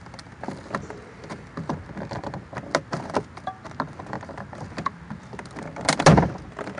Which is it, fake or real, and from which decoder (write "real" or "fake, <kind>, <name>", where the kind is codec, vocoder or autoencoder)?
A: real